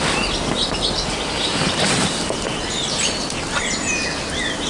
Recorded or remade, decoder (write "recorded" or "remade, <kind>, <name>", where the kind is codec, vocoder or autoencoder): recorded